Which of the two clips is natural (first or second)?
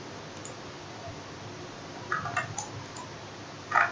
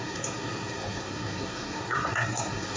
first